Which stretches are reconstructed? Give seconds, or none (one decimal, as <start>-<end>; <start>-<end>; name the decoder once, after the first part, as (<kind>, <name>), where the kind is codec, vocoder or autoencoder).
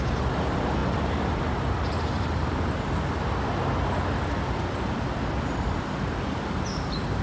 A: none